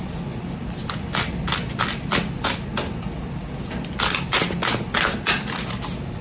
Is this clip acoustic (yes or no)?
yes